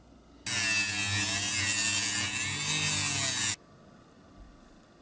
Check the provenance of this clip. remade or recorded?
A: recorded